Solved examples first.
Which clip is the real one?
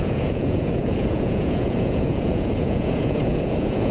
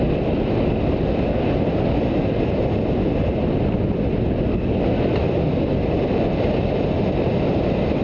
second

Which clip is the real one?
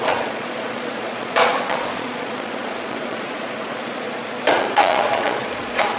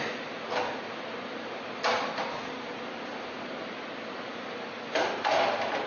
second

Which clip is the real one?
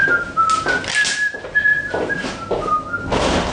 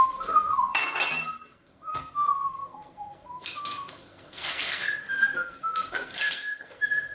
first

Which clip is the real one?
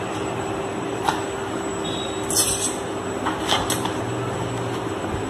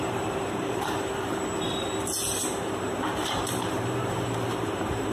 first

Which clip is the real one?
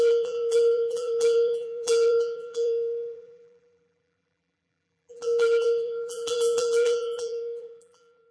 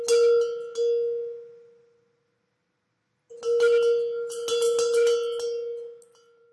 second